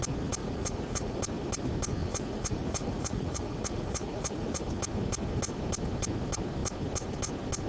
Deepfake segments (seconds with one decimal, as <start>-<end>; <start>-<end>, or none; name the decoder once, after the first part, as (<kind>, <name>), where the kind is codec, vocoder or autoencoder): 0.4-1.2 (vocoder, Vocos); 2.0-4.6

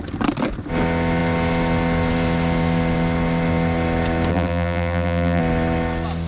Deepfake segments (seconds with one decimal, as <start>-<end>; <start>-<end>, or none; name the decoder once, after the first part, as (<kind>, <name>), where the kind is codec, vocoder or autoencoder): 4.3-5.4 (vocoder, BigVGAN v2)